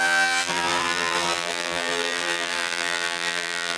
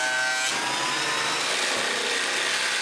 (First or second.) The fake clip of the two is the first